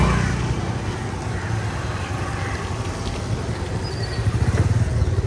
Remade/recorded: recorded